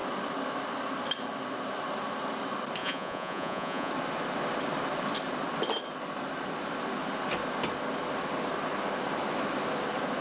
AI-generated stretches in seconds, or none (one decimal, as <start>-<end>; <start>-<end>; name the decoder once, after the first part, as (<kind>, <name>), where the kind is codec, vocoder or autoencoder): 2.8-3.9 (vocoder, Vocos)